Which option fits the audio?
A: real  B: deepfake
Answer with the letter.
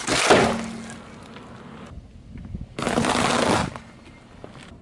A